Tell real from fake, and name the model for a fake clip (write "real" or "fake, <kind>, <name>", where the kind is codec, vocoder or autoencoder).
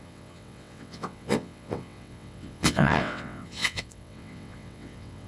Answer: fake, vocoder, WaveNeXt